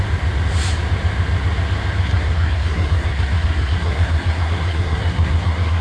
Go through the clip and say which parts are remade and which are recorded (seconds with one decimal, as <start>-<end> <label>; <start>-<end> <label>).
0.0-2.0 recorded; 2.0-5.8 remade

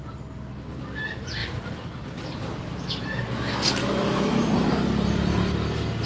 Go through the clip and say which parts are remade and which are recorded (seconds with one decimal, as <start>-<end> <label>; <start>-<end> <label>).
0.0-3.8 recorded; 3.8-4.5 remade; 4.5-6.1 recorded

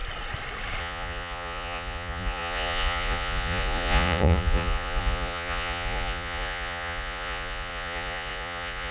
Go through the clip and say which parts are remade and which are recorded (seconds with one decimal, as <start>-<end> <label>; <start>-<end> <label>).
0.0-0.8 recorded; 0.8-8.9 remade

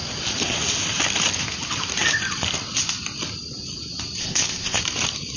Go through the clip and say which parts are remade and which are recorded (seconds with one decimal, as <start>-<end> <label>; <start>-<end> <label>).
0.0-4.2 recorded; 4.2-4.8 remade; 4.8-5.4 recorded

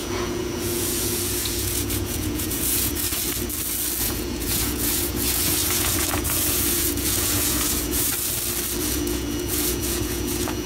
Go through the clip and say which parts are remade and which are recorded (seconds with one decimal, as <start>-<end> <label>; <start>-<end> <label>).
0.0-3.0 remade; 3.0-4.0 recorded; 4.0-8.1 remade; 8.1-8.8 recorded; 8.8-10.7 remade

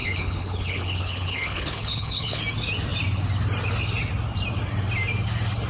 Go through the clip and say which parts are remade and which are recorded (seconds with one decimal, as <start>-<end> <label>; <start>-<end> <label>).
0.0-2.4 remade; 2.4-5.7 recorded